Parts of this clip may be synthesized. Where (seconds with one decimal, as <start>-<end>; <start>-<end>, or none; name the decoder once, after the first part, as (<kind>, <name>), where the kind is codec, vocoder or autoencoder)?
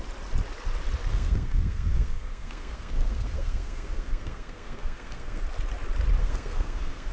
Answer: 1.1-5.4 (codec, SNAC); 6.2-7.1